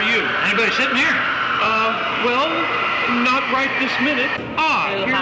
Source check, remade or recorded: recorded